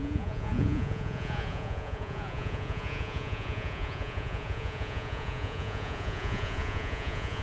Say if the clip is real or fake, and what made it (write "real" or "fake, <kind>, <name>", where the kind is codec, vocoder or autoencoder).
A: fake, vocoder, Vocos